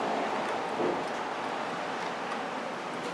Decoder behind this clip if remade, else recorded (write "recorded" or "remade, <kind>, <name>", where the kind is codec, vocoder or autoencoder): recorded